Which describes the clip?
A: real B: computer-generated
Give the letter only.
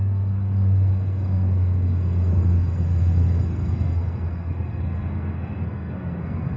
B